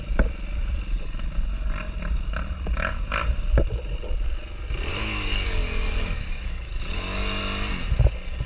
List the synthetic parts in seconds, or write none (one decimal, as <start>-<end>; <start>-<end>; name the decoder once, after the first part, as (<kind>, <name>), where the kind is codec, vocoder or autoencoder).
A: 4.9-7.4 (codec, DAC)